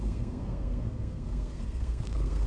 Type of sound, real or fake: fake